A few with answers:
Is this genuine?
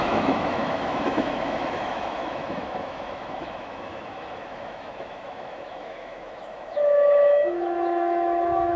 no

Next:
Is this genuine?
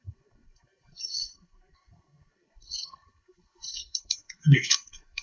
no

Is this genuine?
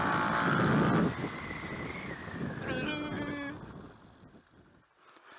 yes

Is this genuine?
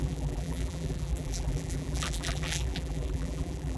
no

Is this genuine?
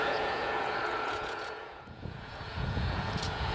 no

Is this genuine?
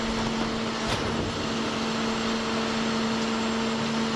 yes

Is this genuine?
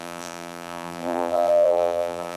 no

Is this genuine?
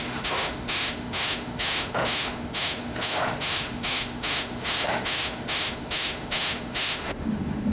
no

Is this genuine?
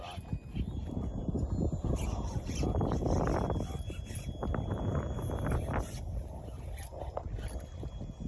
yes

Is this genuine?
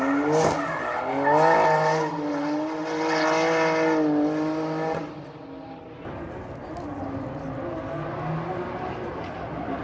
yes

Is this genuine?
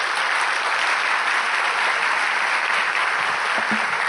yes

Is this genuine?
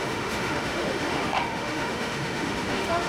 no